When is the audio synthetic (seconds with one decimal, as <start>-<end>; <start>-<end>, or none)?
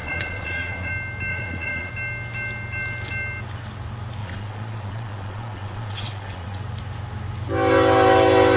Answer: 0.0-0.9; 1.3-1.9; 4.2-6.6